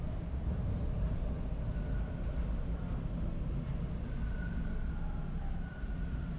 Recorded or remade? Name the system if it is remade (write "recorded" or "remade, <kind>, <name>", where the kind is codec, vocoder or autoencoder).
recorded